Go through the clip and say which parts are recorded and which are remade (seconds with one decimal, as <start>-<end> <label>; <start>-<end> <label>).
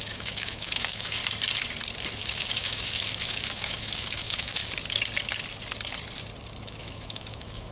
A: 0.0-1.2 remade; 1.2-2.2 recorded; 2.2-4.6 remade; 4.6-6.6 recorded; 6.6-7.7 remade